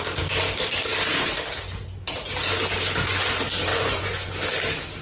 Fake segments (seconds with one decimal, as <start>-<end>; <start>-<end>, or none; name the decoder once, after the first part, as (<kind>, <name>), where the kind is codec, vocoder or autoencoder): 3.7-4.3 (vocoder, Vocos)